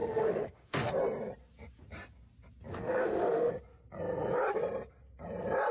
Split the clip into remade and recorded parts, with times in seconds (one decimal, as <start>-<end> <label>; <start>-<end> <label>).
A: 0.0-0.9 remade; 0.9-2.7 recorded; 2.7-3.5 remade; 3.5-5.7 recorded